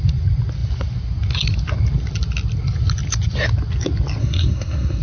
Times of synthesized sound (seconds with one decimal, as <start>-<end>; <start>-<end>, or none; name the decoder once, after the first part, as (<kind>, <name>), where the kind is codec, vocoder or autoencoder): 4.2-5.0 (codec, SNAC)